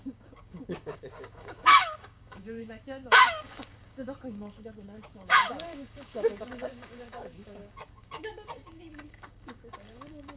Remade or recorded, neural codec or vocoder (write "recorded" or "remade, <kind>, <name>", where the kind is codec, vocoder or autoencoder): remade, codec, DAC